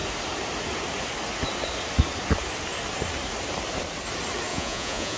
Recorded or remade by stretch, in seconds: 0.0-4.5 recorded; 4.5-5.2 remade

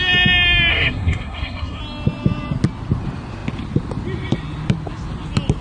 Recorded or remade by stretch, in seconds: 0.0-0.7 recorded; 0.7-1.8 remade; 1.8-5.6 recorded